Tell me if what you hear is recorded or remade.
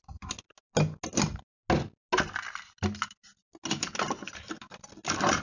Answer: recorded